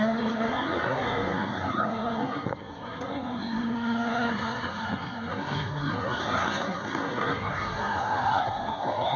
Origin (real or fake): fake